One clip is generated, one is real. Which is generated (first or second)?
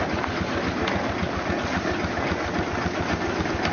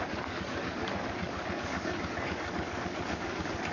second